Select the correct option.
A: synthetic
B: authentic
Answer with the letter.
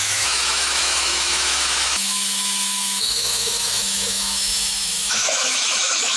A